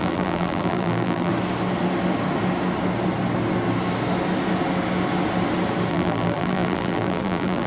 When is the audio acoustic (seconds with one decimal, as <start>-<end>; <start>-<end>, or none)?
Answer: 1.3-5.9